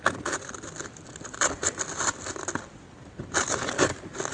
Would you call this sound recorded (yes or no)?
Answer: yes